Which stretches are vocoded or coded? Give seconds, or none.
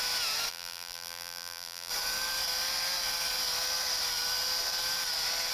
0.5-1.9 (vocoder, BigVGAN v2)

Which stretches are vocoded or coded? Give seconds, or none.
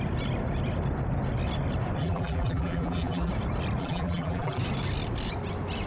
2.0-3.3 (vocoder, BigVGAN v2); 3.8-4.6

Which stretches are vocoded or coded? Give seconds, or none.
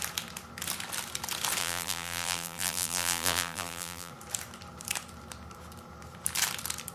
1.6-4.1 (vocoder, BigVGAN v2)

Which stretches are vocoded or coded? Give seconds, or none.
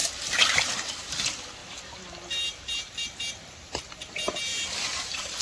0.0-1.0 (vocoder, BigVGAN v2); 1.6-3.7; 4.5-5.4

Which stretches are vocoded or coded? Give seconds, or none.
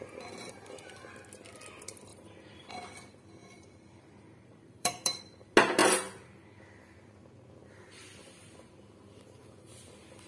2.1-2.7 (vocoder, BigVGAN v2); 3.4-5.2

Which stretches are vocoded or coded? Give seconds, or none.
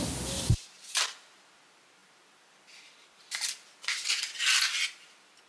0.5-1.1 (vocoder, BigVGAN v2)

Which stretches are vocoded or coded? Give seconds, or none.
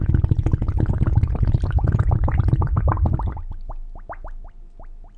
none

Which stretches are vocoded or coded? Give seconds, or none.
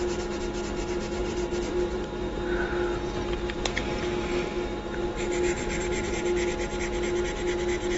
1.2-2.0 (vocoder, BigVGAN v2); 4.7-6.1